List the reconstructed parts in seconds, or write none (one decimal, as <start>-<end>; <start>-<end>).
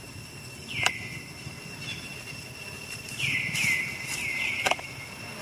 none